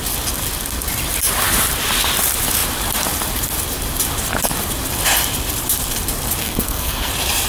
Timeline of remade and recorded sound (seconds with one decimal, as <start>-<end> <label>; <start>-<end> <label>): 0.0-6.4 recorded; 6.4-7.1 remade; 7.1-7.5 recorded